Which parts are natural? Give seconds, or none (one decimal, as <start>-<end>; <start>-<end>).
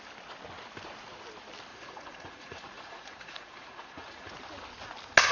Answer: 0.0-1.7; 4.3-5.3